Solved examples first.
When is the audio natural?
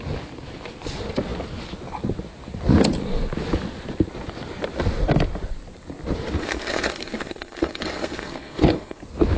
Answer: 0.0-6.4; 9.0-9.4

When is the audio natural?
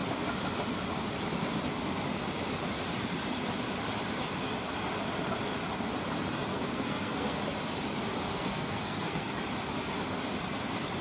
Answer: 0.0-6.5; 7.4-8.2; 9.3-11.0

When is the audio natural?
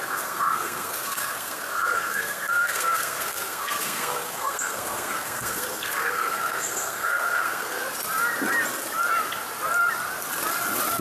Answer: 7.8-11.0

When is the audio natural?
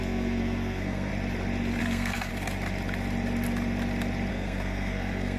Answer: 1.1-1.8; 2.3-4.3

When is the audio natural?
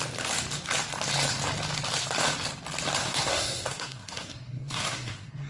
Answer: 0.0-3.0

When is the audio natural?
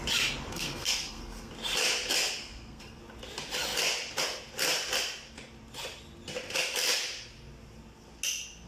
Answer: 0.0-0.5; 1.5-2.4; 3.0-8.7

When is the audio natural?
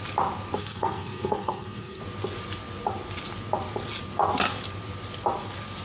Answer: 0.0-0.6; 2.0-5.8